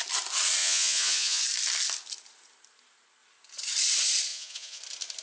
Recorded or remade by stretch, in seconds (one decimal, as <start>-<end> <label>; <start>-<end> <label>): 0.0-0.6 recorded; 0.6-1.4 remade; 1.4-4.3 recorded; 4.3-4.8 remade; 4.8-5.2 recorded